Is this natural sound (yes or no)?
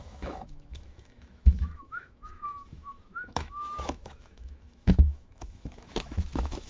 no